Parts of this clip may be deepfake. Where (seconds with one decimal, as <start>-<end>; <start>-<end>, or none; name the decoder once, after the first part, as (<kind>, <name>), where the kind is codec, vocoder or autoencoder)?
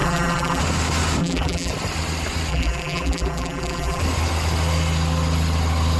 0.0-0.6 (vocoder, BigVGAN v2); 1.2-1.7; 2.5-4.0